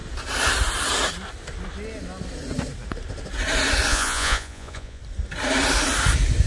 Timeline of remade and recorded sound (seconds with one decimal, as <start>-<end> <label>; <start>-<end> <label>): 0.0-3.9 recorded; 3.9-5.0 remade; 5.0-6.5 recorded